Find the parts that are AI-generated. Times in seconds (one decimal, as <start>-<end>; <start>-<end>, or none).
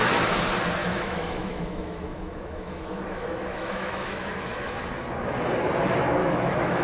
0.8-4.9; 6.2-6.8